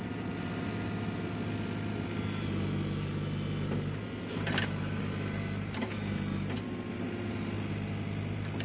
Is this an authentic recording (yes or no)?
yes